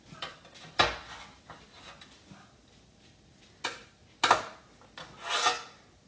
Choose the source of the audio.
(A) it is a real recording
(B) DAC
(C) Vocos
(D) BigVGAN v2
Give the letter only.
A